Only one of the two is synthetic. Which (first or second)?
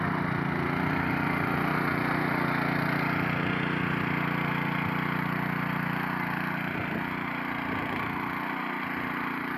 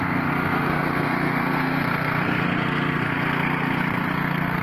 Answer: second